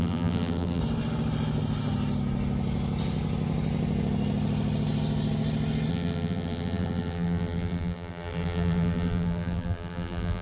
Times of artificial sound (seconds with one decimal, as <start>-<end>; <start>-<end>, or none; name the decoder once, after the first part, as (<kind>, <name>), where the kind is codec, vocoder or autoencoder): 0.0-0.8 (vocoder, BigVGAN v2); 5.9-10.4